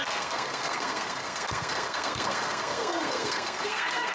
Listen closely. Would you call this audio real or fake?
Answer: fake